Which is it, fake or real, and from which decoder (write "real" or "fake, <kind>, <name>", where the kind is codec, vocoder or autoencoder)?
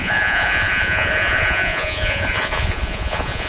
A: fake, vocoder, Vocos